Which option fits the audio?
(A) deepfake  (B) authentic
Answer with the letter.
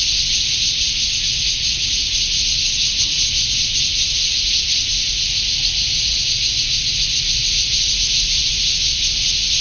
B